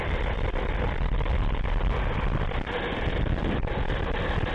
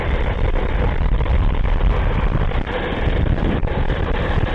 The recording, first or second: first